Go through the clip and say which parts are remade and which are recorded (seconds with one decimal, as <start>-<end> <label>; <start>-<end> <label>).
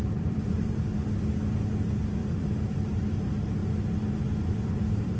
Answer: 0.0-0.9 remade; 0.9-1.8 recorded; 1.8-3.6 remade; 3.6-4.7 recorded; 4.7-5.2 remade